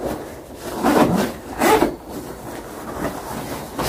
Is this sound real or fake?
real